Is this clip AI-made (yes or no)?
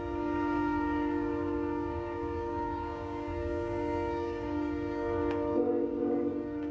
yes